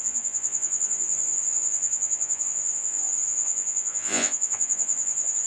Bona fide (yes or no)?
no